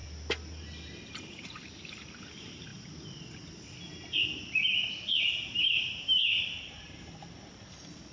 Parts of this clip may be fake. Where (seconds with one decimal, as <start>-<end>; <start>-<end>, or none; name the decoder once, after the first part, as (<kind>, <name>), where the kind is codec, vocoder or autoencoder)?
1.2-2.7 (vocoder, BigVGAN v2); 5.2-8.1